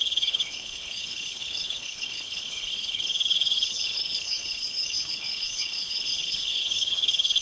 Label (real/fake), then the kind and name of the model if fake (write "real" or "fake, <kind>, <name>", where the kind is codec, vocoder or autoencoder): fake, codec, HILCodec